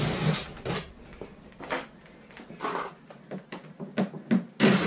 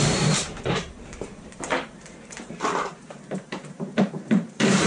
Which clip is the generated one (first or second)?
second